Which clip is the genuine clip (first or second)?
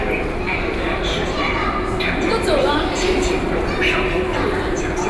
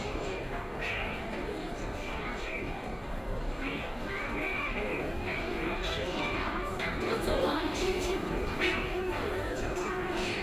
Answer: first